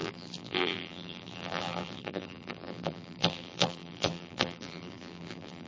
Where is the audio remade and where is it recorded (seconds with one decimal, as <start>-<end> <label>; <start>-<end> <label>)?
0.0-5.7 remade